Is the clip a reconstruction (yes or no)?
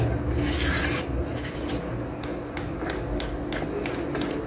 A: no